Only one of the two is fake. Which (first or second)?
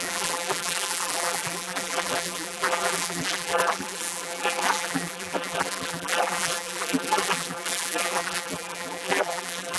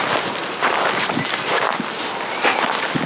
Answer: first